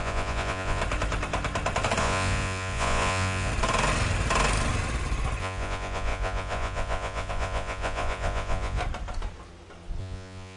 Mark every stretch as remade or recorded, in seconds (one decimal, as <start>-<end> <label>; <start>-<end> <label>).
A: 0.0-0.8 remade; 0.8-2.0 recorded; 2.0-3.5 remade; 3.5-5.4 recorded; 5.4-8.8 remade; 8.8-10.0 recorded; 10.0-10.6 remade